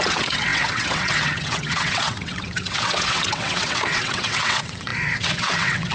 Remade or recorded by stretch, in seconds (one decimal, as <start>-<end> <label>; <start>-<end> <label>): 0.0-5.9 remade